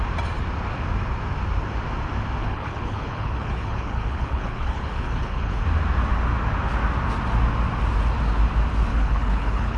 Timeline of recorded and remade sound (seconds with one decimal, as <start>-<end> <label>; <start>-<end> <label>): 0.0-2.4 recorded; 2.4-5.6 remade; 5.6-8.9 recorded; 8.9-9.8 remade